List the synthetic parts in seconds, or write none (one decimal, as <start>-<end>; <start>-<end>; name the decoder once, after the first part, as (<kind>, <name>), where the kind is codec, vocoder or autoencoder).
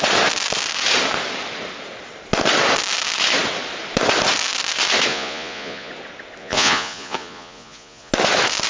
5.1-5.9 (vocoder, Vocos); 6.4-8.1